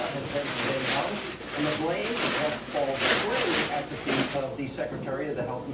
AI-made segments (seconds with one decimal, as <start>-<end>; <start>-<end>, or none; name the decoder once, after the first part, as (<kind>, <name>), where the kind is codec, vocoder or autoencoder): none